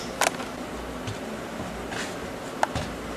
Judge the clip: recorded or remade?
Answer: recorded